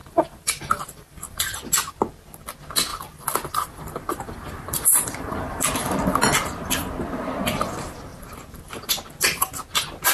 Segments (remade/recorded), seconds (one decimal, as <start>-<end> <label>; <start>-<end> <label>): 0.0-1.4 remade; 1.4-2.9 recorded; 2.9-6.0 remade; 6.0-10.1 recorded